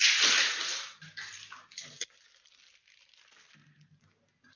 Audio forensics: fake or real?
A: real